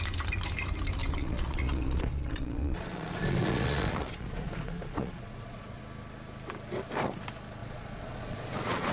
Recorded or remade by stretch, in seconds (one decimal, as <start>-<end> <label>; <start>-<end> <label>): 0.0-1.0 recorded; 1.0-5.8 remade; 5.8-7.6 recorded; 7.6-8.9 remade